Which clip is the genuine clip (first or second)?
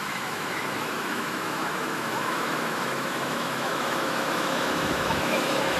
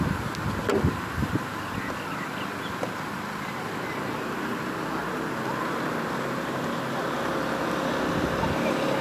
second